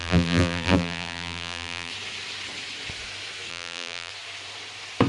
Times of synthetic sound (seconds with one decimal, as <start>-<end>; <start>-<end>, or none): 0.0-1.9; 3.5-4.1